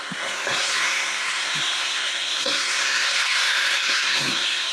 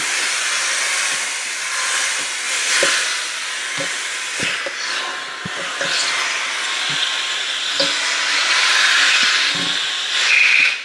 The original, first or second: second